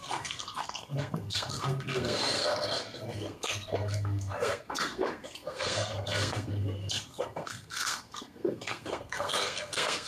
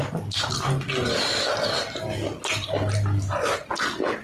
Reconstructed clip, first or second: first